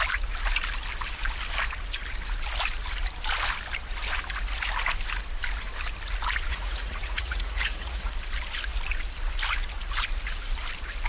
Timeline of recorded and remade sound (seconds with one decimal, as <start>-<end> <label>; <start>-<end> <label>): 0.0-6.5 recorded; 6.5-8.1 remade; 8.1-11.1 recorded